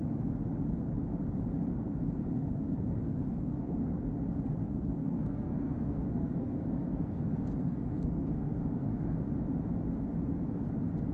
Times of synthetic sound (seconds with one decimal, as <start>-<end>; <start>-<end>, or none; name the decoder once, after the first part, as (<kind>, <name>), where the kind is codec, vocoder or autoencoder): 1.7-4.0 (codec, SNAC); 4.6-9.2